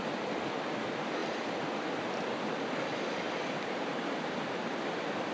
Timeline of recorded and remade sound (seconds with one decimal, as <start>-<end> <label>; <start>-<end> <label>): 0.0-5.3 recorded